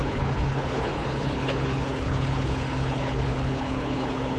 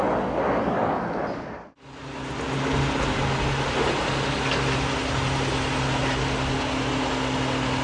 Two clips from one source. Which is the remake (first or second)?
first